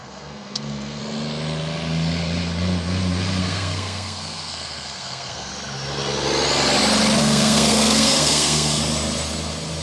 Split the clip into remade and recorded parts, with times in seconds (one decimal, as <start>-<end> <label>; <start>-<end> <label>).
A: 0.0-1.0 remade; 1.0-3.4 recorded; 3.4-5.5 remade; 5.5-7.2 recorded; 7.2-8.8 remade; 8.8-9.8 recorded